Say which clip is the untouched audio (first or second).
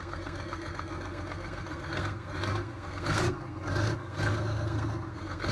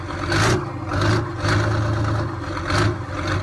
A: second